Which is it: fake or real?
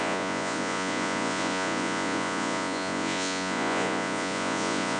fake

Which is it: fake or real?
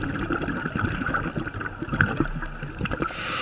real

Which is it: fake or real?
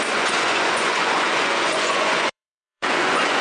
fake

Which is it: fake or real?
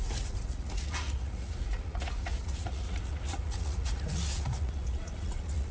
fake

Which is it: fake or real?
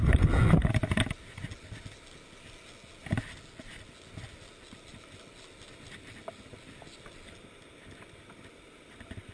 real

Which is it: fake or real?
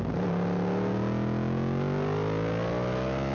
real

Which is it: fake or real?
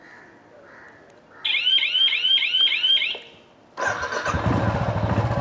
real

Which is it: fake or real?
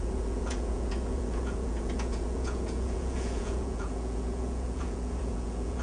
fake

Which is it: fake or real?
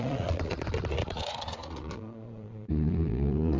fake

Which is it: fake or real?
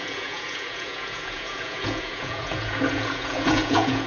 fake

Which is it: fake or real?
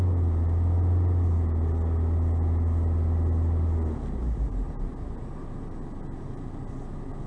real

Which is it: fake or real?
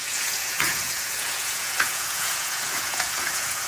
fake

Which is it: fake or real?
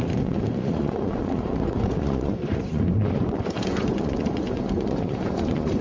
fake